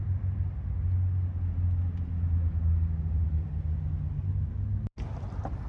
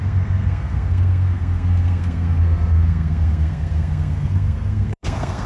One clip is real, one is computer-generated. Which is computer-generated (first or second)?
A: second